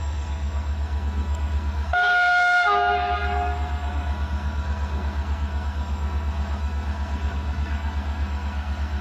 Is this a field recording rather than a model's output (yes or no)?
no